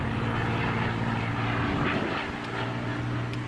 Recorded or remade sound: recorded